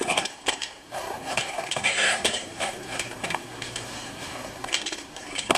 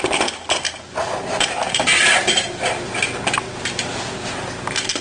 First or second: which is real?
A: second